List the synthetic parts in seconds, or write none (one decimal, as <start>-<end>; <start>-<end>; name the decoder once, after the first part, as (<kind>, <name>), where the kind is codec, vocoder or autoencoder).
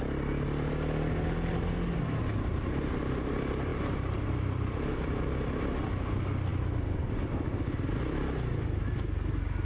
none